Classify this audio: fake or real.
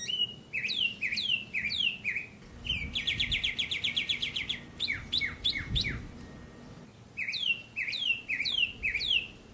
real